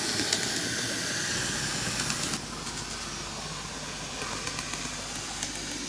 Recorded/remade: recorded